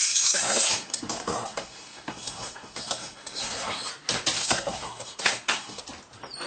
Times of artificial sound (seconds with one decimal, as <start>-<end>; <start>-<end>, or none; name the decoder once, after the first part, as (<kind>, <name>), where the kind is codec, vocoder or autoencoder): 0.0-3.9 (codec, SNAC); 4.4-5.8